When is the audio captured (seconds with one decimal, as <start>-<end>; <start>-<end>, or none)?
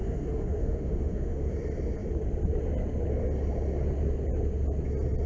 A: 1.5-5.3